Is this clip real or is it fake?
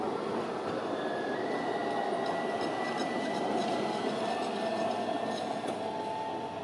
real